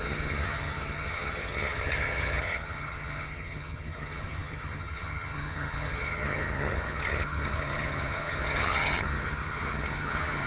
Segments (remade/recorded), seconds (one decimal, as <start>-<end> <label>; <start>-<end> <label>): 0.0-10.5 remade